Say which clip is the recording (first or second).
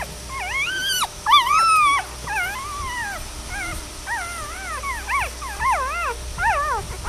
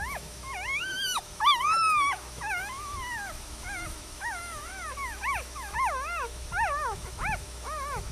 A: first